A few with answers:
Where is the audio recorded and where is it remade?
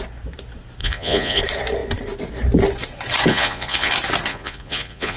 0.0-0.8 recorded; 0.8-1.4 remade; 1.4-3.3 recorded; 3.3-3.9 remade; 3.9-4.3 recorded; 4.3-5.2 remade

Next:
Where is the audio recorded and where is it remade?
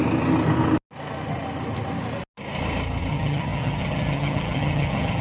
0.0-3.1 recorded; 3.1-5.2 remade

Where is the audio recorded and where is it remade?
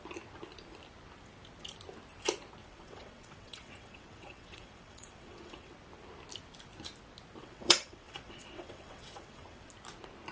0.0-2.6 recorded; 2.6-5.7 remade; 5.7-7.4 recorded; 7.4-9.7 remade; 9.7-10.3 recorded